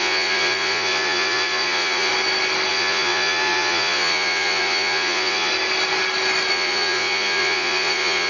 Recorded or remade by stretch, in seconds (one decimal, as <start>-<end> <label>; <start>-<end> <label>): 0.0-2.1 remade; 2.1-2.7 recorded; 2.7-5.5 remade; 5.5-6.5 recorded; 6.5-8.3 remade